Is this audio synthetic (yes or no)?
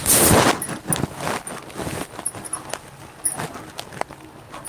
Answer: no